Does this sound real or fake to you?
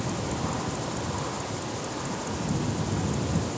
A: real